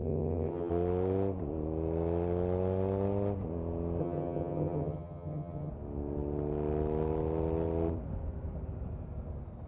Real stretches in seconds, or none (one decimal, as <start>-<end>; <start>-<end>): 0.7-4.0; 5.7-9.7